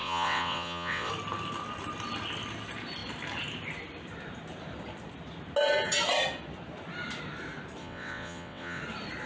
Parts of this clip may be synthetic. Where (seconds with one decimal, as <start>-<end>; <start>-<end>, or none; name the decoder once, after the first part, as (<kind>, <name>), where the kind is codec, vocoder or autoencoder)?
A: 0.0-1.1 (vocoder, WaveNeXt); 7.8-8.8